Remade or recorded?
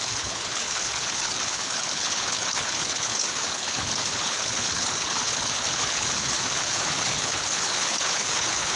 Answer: remade